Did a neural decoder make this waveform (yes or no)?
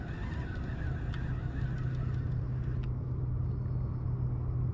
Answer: no